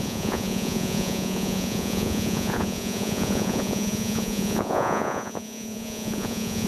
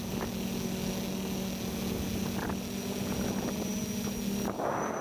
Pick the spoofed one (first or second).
first